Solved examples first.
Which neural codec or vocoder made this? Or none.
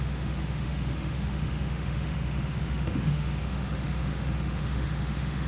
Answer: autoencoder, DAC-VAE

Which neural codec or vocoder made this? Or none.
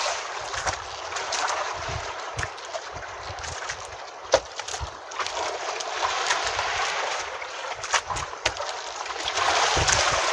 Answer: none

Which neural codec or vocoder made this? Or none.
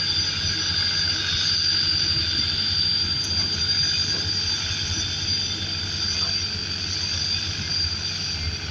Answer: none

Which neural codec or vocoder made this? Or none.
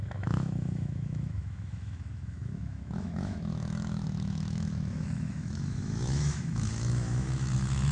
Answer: autoencoder, DAC-VAE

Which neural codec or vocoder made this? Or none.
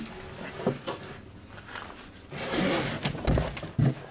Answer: none